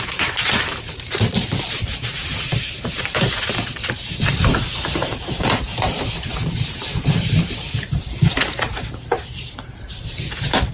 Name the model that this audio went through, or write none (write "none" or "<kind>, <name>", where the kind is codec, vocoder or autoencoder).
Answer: vocoder, BigVGAN v2